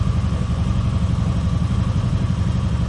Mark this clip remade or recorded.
remade